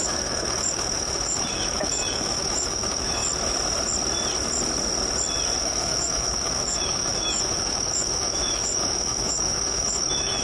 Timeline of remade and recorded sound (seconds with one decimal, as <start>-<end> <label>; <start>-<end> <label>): 0.0-3.2 remade; 3.2-5.6 recorded; 5.6-10.4 remade